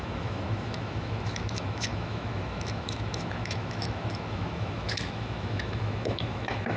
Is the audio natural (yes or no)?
no